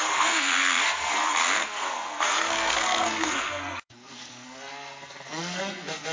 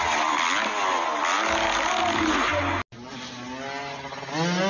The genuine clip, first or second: second